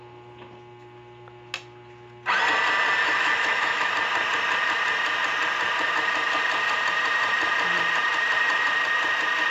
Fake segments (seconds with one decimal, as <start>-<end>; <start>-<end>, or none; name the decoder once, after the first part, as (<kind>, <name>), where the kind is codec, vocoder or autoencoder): 3.0-3.9 (autoencoder, DAC-VAE)